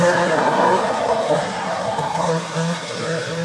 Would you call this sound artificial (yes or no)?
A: yes